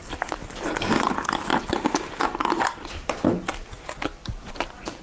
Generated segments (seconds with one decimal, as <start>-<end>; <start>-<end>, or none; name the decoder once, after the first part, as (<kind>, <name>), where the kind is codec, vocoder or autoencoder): none